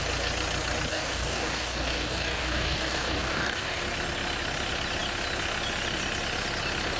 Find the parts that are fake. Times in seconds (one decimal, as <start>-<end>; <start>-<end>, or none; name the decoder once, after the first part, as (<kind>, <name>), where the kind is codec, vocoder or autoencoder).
0.9-3.8 (codec, DAC)